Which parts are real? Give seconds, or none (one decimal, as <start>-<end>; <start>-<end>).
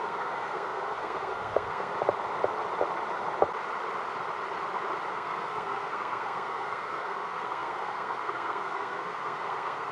1.9-5.1